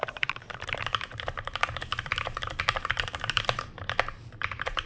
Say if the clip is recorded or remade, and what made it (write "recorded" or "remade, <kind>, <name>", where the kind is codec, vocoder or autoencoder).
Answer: remade, vocoder, BigVGAN v2